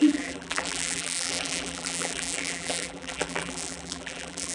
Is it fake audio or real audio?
fake